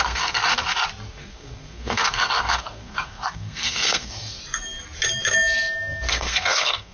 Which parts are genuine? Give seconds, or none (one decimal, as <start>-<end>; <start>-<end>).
0.4-1.1; 4.4-6.1